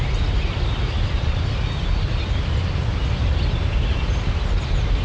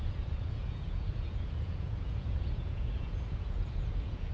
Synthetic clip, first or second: second